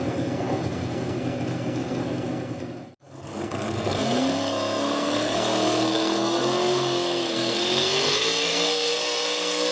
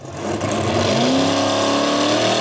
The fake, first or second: first